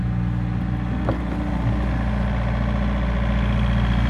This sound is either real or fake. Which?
real